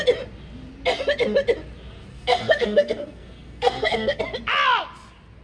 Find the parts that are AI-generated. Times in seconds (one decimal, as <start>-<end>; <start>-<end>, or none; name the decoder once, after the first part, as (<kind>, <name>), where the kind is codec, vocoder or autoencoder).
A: 2.1-4.2 (codec, SNAC)